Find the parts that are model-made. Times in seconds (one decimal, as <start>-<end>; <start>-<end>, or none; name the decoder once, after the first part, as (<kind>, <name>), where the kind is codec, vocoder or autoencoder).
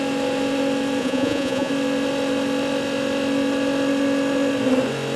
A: 1.0-1.7 (vocoder, Vocos)